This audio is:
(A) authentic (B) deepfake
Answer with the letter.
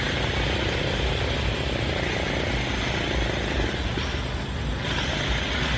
A